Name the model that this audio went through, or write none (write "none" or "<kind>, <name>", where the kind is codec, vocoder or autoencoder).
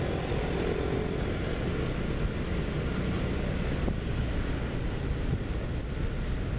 none